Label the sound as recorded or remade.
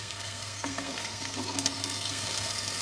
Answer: remade